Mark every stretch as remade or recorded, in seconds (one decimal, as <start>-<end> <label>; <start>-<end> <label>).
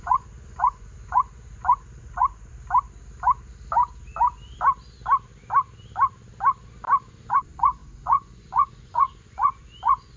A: 0.0-2.5 remade; 2.5-7.3 recorded; 7.3-10.2 remade